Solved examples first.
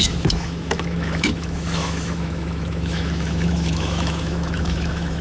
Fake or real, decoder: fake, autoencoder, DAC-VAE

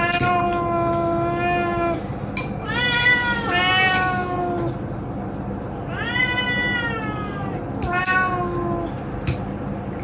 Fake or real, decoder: real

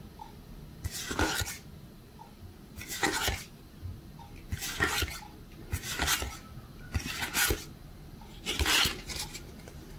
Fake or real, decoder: real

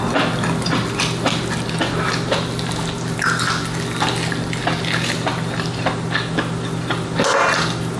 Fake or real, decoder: real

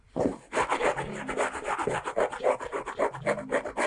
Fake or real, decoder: real